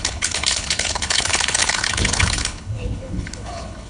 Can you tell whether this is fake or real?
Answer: fake